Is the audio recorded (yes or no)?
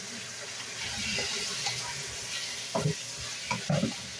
yes